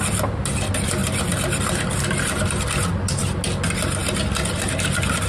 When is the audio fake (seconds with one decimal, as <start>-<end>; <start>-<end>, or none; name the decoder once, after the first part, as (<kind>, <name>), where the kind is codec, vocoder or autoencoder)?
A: none